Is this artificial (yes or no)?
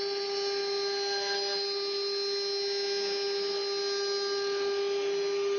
no